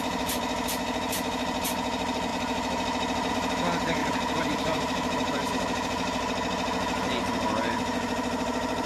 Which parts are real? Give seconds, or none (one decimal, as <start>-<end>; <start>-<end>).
0.0-4.0; 5.5-8.9

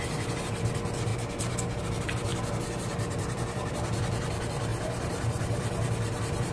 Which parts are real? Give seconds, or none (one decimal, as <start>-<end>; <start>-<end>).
1.1-1.8; 2.3-2.8; 4.7-5.2

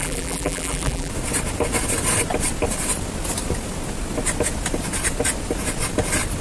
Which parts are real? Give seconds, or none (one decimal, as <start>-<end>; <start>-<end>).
1.1-6.4

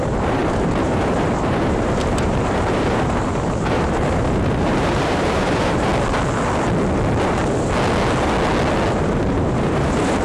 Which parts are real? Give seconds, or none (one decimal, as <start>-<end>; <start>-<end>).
5.9-9.0